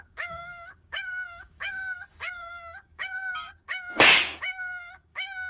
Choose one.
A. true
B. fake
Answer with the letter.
B